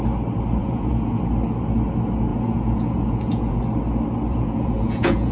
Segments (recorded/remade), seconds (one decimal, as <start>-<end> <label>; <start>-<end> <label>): 0.0-0.6 recorded; 0.6-1.2 remade; 1.2-2.3 recorded; 2.3-3.6 remade; 3.6-4.3 recorded; 4.3-5.3 remade